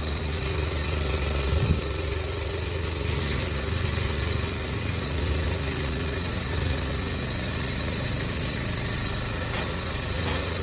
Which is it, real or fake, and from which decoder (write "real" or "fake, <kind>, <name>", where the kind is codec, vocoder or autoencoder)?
fake, vocoder, Vocos